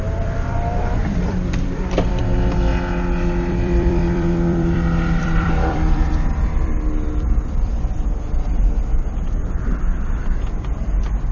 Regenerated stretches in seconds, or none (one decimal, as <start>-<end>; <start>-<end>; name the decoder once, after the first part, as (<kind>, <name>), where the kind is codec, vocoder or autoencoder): 0.0-2.7 (vocoder, BigVGAN v2); 3.5-11.3